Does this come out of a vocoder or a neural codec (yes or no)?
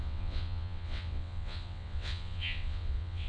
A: yes